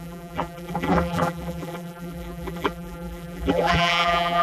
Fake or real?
fake